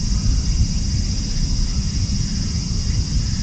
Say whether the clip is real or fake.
real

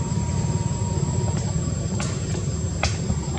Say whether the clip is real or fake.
fake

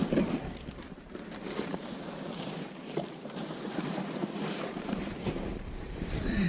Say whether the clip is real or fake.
fake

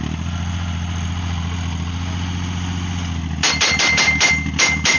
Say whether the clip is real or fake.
real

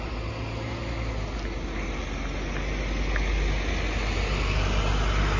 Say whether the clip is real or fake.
real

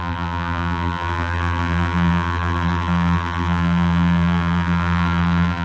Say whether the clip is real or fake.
fake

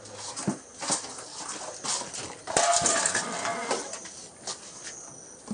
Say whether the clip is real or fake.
real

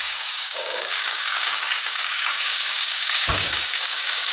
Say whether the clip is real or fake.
fake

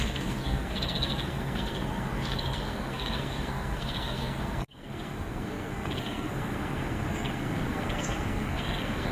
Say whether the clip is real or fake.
fake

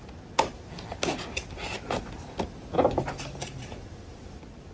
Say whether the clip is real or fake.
real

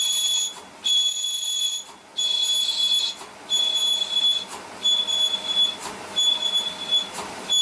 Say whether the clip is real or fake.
real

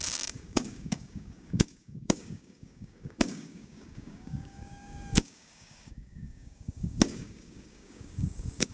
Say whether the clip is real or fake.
fake